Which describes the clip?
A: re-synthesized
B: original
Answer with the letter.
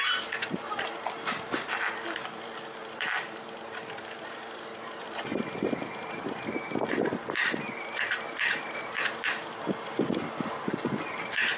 A